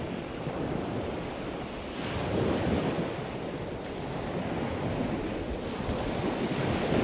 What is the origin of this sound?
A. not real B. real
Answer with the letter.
B